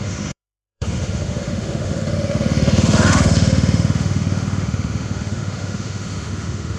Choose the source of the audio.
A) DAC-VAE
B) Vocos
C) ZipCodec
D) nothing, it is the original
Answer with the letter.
A